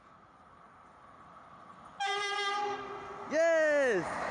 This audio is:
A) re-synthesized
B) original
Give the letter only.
B